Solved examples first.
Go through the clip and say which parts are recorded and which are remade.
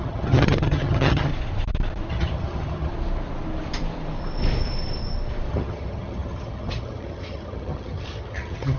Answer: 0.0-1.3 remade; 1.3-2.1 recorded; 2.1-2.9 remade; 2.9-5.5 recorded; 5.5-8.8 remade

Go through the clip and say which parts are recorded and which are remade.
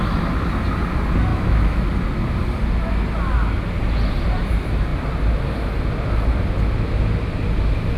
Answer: 0.0-1.3 recorded; 1.3-1.8 remade; 1.8-8.0 recorded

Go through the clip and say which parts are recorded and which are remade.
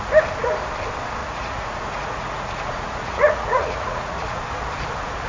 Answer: 0.0-1.2 recorded; 1.2-4.4 remade; 4.4-5.3 recorded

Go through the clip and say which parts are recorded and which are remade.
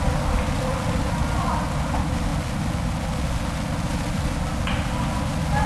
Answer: 0.0-5.7 recorded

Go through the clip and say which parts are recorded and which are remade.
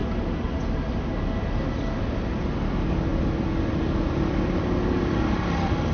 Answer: 0.0-5.9 recorded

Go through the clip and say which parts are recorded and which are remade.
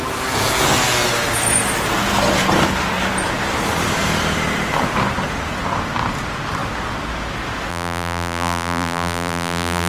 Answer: 0.0-7.7 recorded; 7.7-9.9 remade